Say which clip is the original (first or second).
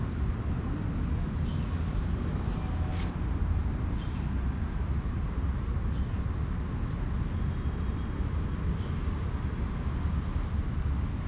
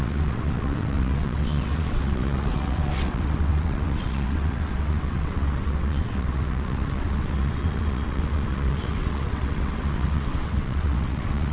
first